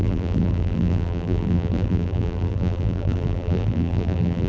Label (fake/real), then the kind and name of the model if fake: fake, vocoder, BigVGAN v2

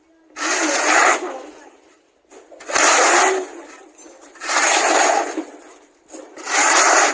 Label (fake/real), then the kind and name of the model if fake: real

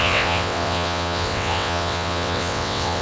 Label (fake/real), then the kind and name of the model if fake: fake, vocoder, WaveNeXt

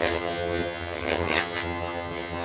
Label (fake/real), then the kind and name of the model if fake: fake, vocoder, HiFi-GAN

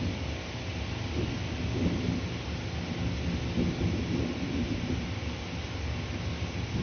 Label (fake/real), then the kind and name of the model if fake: real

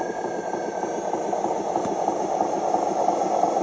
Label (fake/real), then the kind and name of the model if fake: real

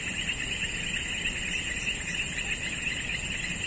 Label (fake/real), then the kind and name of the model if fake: real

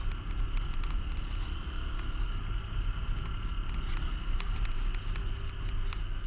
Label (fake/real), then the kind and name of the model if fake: real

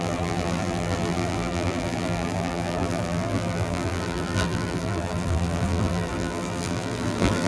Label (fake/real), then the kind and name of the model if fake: fake, vocoder, BigVGAN v2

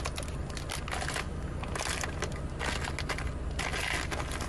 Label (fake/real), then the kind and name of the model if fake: real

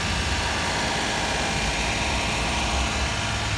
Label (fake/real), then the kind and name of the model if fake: real